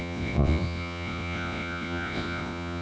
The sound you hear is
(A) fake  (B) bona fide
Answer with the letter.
A